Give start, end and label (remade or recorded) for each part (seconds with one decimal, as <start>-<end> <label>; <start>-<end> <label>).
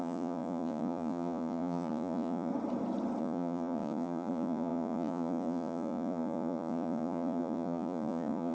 0.0-2.5 remade; 2.5-3.2 recorded; 3.2-8.5 remade